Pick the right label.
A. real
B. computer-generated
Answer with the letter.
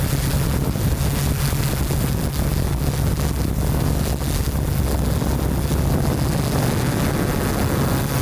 A